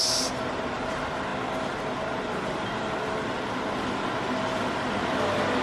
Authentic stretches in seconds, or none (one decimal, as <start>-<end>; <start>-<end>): 0.0-5.6

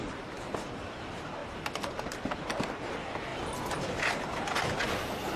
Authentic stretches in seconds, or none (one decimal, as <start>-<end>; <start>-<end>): 0.0-5.4

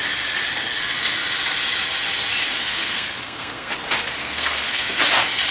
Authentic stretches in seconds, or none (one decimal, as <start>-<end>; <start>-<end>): 0.0-2.6; 3.7-4.2; 5.0-5.5

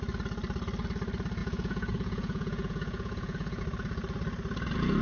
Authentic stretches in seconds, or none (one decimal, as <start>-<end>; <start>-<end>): 0.0-1.4; 3.6-5.0